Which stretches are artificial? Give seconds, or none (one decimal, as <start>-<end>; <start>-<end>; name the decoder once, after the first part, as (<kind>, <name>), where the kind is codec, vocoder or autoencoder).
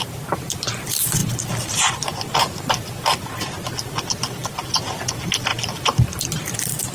none